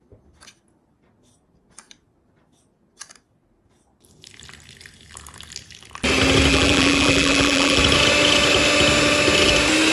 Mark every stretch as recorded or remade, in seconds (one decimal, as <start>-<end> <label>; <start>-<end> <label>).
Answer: 0.0-6.5 recorded; 6.5-7.8 remade; 7.8-9.9 recorded